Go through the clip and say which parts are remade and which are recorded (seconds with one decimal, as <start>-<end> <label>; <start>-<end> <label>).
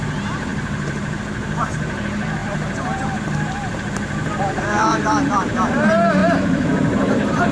0.0-7.5 remade